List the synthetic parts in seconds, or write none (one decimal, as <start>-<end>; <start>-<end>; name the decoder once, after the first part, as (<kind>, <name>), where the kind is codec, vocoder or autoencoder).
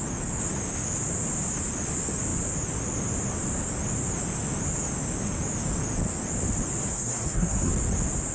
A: 6.9-7.7 (codec, SNAC)